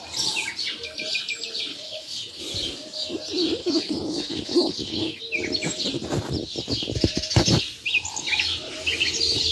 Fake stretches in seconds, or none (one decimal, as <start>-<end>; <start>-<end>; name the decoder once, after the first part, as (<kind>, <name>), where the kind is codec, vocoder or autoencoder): 1.7-2.4 (codec, HILCodec); 3.6-5.2